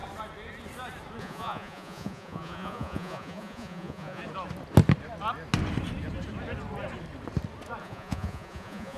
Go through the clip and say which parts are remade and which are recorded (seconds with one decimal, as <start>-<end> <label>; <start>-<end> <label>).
0.0-1.2 recorded; 1.2-4.2 remade; 4.2-7.8 recorded; 7.8-9.0 remade